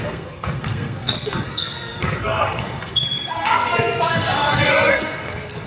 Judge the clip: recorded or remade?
remade